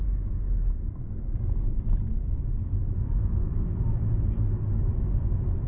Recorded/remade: recorded